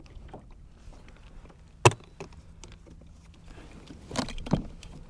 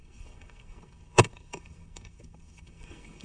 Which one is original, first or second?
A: first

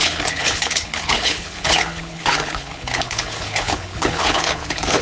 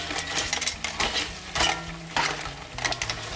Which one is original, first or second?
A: second